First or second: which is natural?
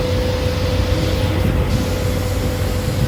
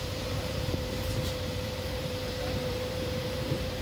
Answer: first